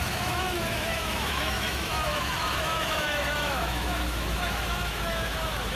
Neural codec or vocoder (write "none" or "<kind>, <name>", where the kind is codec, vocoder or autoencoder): autoencoder, DAC-VAE